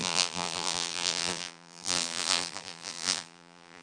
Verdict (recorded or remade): remade